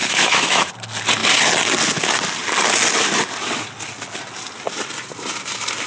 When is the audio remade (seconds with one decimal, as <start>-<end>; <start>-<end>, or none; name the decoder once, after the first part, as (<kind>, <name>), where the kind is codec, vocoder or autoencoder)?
0.0-0.7 (autoencoder, DAC-VAE)